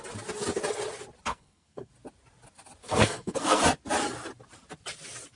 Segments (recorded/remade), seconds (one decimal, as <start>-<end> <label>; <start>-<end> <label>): 0.0-1.3 recorded; 1.3-1.9 remade; 1.9-2.8 recorded; 2.8-3.6 remade; 3.6-5.4 recorded